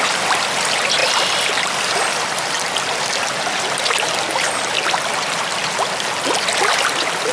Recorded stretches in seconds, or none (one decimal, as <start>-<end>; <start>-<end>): 0.0-1.0; 1.8-7.3